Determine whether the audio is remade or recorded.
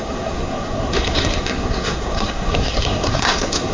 remade